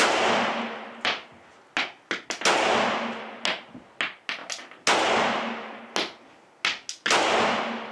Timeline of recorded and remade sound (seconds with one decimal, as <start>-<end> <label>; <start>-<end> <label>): 0.0-7.9 recorded

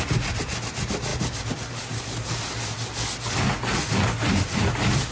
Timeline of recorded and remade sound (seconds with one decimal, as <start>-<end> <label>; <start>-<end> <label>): 0.0-5.1 recorded